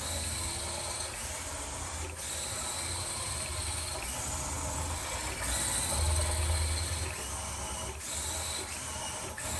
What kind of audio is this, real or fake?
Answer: real